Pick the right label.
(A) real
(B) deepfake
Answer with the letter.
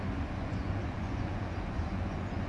B